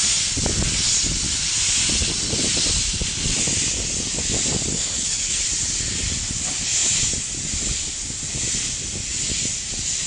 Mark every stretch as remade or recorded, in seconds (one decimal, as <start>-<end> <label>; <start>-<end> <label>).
0.0-4.7 recorded; 4.7-5.4 remade; 5.4-10.1 recorded